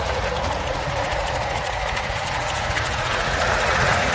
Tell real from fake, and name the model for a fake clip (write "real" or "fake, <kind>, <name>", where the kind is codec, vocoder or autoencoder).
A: fake, vocoder, Vocos